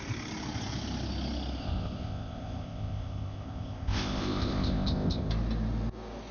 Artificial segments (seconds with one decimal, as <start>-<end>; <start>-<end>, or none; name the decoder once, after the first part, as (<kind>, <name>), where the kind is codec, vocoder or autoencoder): 1.6-5.3 (codec, ZipCodec)